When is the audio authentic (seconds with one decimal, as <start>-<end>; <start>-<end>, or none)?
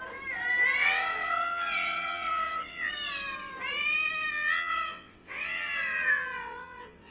0.0-0.8; 2.9-4.3